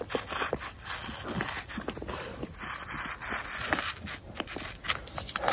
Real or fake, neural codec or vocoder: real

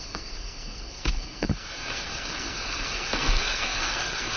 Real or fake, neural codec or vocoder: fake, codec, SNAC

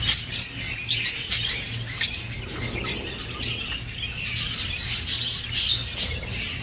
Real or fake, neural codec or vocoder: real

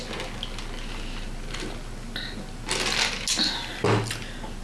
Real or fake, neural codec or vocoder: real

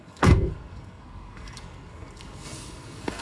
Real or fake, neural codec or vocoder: fake, codec, SNAC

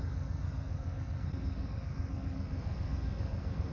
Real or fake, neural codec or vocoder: fake, codec, SNAC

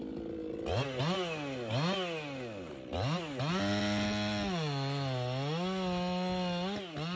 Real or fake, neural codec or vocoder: real